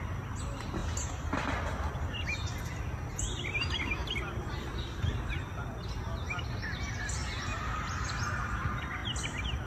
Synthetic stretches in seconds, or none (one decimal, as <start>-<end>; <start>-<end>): 4.0-5.3

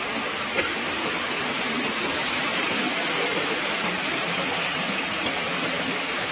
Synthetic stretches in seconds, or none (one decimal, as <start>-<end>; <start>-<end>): 0.0-6.3

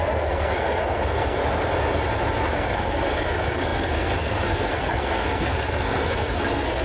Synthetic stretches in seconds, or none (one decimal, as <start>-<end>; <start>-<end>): 0.0-1.4; 2.5-6.8

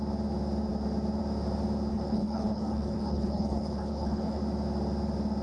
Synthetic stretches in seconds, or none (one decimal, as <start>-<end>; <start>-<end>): 1.9-4.4

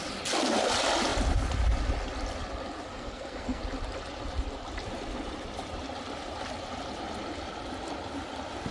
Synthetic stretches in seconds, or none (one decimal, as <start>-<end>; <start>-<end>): 2.9-3.6

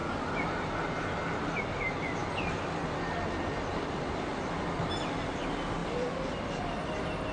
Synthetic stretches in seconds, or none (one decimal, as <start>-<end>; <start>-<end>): 5.8-6.6

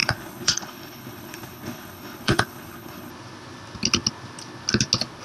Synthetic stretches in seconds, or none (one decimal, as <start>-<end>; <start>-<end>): 0.0-3.1